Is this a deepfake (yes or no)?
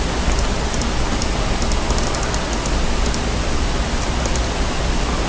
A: no